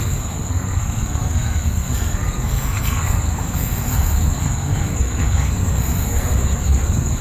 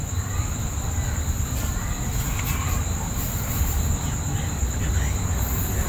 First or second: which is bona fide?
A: second